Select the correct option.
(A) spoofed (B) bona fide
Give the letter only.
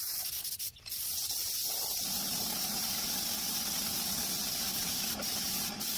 B